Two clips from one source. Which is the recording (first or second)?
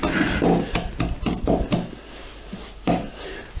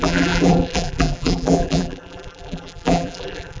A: first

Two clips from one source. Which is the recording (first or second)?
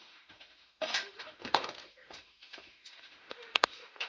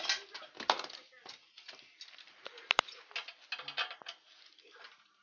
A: second